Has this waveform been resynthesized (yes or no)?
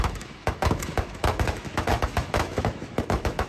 yes